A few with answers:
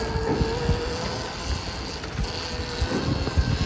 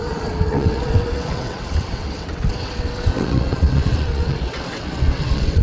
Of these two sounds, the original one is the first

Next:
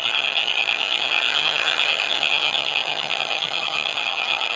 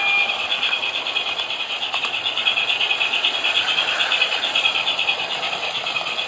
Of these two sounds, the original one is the second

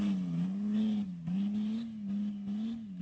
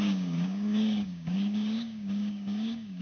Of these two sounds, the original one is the first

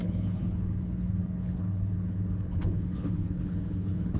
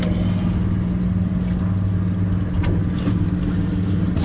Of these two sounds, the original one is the second